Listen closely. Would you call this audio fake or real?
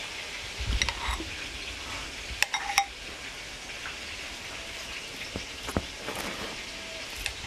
real